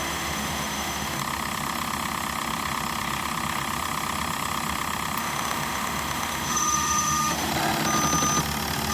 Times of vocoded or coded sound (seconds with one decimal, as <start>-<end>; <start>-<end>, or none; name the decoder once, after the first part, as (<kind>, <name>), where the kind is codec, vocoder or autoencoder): 0.0-1.2 (autoencoder, DAC-VAE); 5.2-7.5

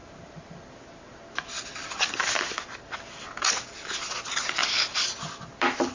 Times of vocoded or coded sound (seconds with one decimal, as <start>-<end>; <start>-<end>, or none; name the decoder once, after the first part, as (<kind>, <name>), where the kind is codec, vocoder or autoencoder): none

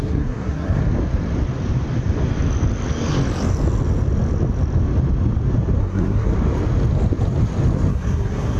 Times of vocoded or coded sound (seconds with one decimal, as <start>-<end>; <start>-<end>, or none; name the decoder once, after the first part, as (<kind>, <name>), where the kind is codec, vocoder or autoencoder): 0.0-0.8 (codec, SNAC); 5.8-6.3; 7.9-8.6

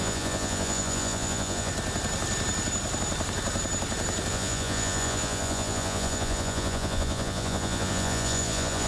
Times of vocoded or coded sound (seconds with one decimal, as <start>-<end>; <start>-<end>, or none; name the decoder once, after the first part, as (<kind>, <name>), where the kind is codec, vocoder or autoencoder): 0.0-1.7 (vocoder, Vocos); 4.3-8.9